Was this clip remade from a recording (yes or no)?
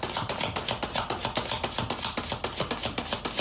no